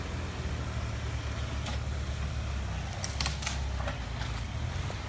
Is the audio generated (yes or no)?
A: no